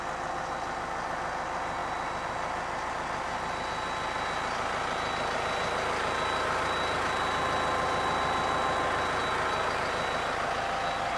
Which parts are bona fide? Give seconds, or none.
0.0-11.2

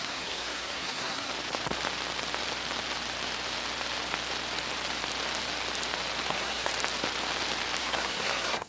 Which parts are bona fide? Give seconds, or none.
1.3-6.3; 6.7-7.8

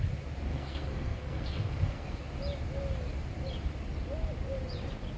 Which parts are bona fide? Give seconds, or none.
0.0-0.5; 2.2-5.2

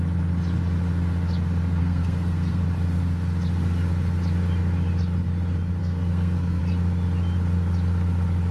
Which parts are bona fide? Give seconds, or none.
0.0-1.8; 2.6-5.8; 6.6-8.5

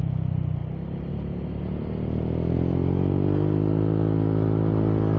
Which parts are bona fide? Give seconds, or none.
0.0-5.2